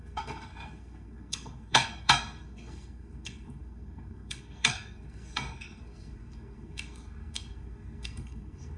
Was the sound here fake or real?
fake